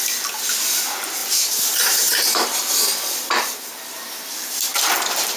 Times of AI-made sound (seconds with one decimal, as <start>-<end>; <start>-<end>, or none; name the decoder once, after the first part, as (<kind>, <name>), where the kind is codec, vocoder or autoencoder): 1.2-3.7 (vocoder, BigVGAN v2)